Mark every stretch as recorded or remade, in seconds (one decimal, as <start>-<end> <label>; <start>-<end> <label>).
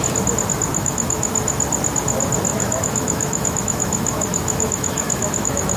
0.0-0.7 recorded; 0.7-1.3 remade; 1.3-2.5 recorded; 2.5-5.8 remade